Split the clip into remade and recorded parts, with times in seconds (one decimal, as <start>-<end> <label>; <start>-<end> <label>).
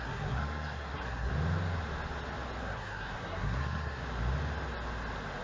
0.0-1.3 remade; 1.3-2.6 recorded; 2.6-4.0 remade; 4.0-5.4 recorded